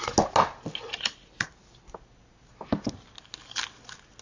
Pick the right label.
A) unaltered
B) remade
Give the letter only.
A